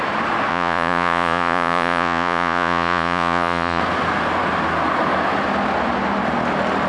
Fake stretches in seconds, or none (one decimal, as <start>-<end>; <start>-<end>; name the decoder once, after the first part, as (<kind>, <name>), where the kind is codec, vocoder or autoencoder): 0.5-3.8 (vocoder, Vocos)

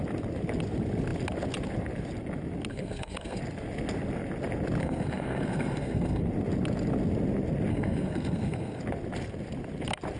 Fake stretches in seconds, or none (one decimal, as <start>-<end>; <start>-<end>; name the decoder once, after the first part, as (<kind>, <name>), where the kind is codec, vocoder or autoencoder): 2.7-3.4 (codec, SNAC); 4.8-6.2; 7.7-8.8